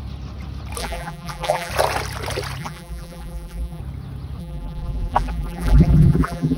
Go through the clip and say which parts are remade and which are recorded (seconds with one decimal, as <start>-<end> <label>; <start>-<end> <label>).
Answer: 0.0-0.8 recorded; 0.8-1.7 remade; 1.7-2.6 recorded; 2.6-3.8 remade; 3.8-4.4 recorded; 4.4-6.6 remade